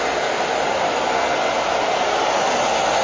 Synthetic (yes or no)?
no